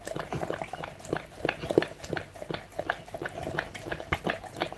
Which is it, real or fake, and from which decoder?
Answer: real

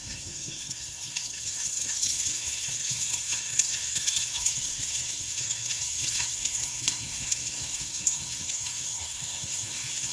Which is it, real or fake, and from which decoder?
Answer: fake, codec, SNAC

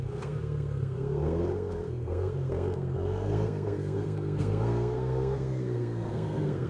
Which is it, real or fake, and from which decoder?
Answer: fake, codec, SNAC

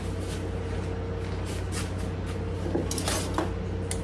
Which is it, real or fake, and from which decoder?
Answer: real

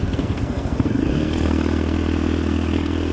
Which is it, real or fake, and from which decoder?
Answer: fake, codec, SNAC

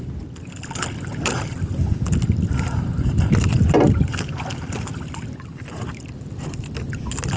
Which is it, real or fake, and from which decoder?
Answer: real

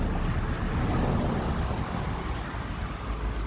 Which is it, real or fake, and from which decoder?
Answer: real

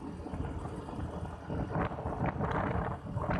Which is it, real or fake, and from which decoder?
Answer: real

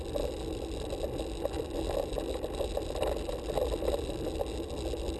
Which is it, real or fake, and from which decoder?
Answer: real